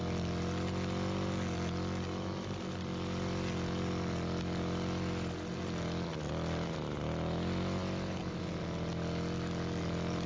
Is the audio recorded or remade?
recorded